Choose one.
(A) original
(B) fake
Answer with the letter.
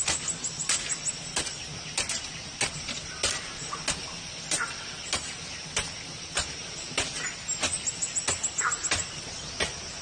A